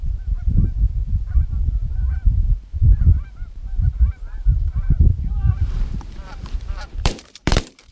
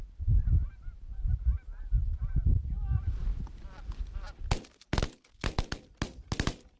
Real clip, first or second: second